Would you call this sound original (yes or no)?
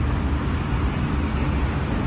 yes